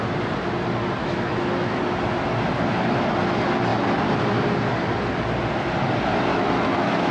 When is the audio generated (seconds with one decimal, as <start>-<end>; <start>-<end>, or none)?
1.0-1.8; 6.3-7.1